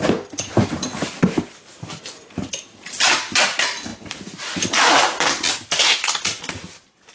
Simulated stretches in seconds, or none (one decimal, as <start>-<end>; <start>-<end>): none